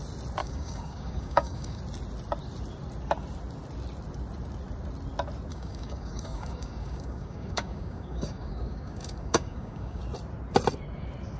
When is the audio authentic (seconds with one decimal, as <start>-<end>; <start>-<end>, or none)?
0.0-0.4; 1.8-5.5; 10.0-11.4